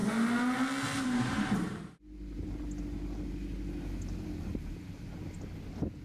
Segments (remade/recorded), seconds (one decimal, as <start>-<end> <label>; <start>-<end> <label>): 0.0-6.0 recorded